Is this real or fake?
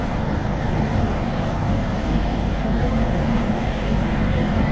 fake